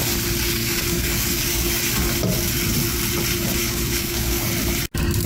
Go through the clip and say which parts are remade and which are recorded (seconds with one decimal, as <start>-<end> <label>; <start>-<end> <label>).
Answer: 0.0-0.6 recorded; 0.6-1.8 remade; 1.8-3.6 recorded; 3.6-4.5 remade; 4.5-5.3 recorded